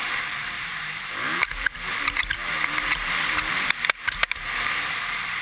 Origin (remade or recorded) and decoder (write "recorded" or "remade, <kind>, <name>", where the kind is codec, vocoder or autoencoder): remade, vocoder, BigVGAN v2